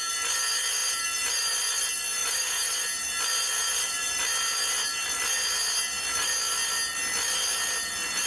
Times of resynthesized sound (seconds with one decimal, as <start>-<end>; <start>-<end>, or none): 2.2-2.7